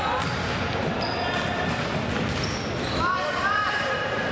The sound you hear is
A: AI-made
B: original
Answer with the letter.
B